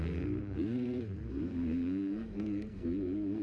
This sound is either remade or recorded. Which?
remade